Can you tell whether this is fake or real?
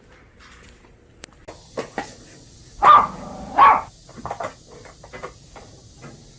real